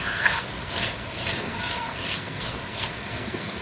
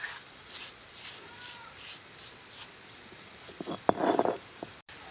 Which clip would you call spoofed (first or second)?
first